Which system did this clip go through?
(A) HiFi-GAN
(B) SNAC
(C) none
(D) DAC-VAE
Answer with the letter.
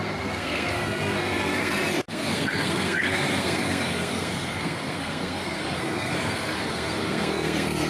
B